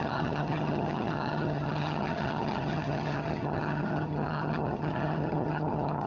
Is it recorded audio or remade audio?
remade